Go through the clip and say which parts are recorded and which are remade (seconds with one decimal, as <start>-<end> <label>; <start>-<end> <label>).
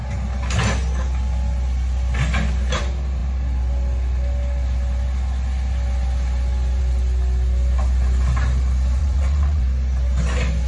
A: 0.0-9.0 recorded; 9.0-9.6 remade; 9.6-10.7 recorded